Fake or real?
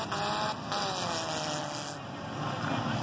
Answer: real